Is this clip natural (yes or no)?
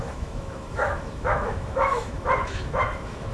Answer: no